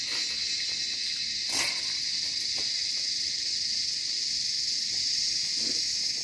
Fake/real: real